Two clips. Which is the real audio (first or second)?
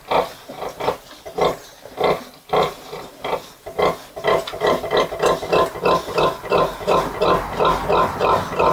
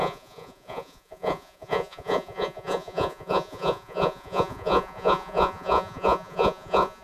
first